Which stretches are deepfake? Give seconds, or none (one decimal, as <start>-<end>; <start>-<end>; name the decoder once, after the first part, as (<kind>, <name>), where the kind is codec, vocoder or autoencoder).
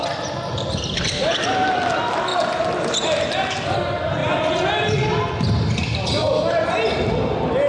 none